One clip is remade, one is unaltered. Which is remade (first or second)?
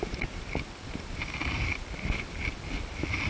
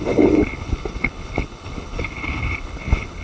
second